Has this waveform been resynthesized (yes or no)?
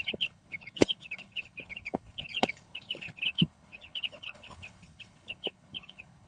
yes